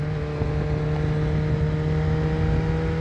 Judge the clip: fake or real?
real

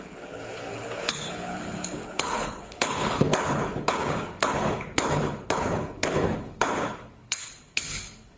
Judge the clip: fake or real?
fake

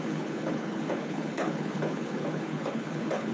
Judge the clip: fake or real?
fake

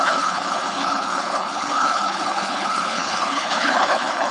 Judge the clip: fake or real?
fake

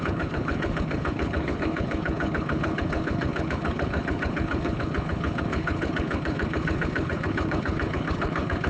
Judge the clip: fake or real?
fake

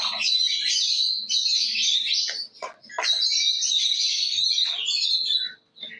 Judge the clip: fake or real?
real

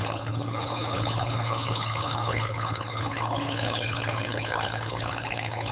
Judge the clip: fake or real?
fake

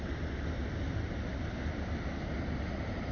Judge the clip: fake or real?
real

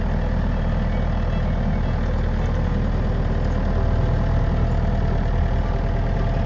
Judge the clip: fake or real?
real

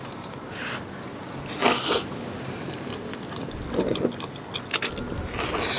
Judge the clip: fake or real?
real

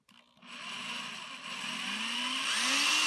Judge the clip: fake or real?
real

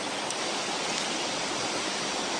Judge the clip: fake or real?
real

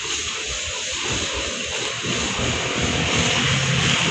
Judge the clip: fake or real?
real